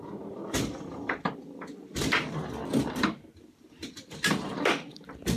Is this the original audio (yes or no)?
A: no